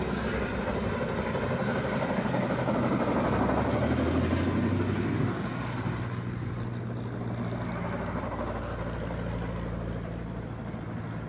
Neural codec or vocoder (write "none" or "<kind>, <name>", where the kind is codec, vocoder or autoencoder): none